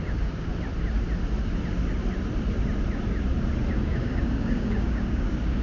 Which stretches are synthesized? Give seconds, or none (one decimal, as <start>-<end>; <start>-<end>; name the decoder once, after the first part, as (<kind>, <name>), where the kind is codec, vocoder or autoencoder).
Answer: 0.0-0.5 (codec, DAC); 3.7-5.6